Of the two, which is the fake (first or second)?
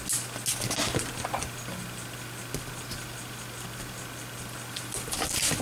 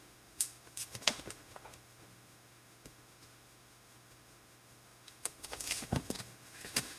second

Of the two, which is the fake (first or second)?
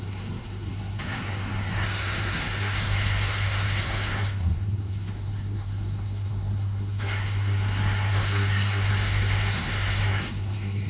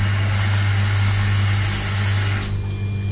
first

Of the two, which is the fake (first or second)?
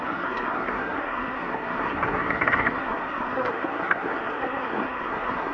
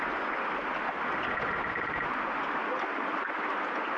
first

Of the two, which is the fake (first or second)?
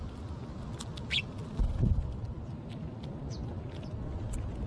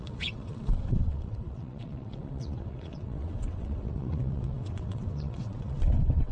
second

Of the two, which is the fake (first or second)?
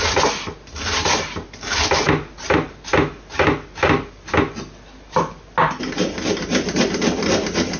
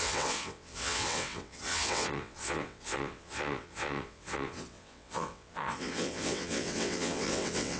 second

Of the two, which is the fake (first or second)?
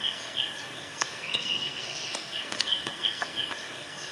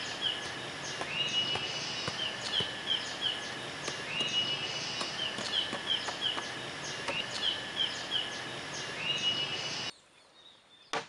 first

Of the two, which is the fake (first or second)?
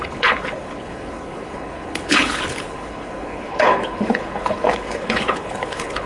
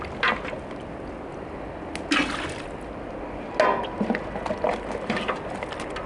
first